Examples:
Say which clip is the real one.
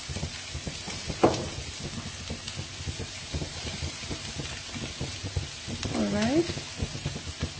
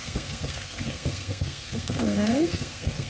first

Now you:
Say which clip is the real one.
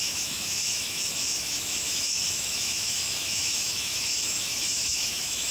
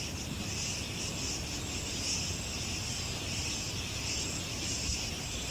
second